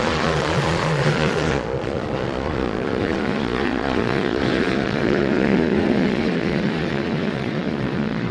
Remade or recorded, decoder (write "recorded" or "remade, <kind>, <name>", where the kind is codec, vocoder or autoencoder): remade, vocoder, Vocos